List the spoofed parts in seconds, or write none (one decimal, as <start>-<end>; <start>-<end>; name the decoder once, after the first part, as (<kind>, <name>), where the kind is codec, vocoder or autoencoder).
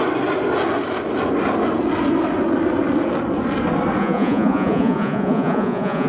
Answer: 4.0-6.1 (vocoder, Vocos)